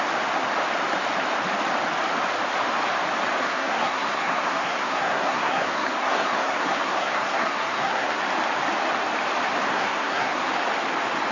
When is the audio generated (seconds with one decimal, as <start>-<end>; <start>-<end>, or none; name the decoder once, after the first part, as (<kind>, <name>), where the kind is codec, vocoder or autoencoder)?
3.4-8.2 (codec, SNAC); 9.7-10.5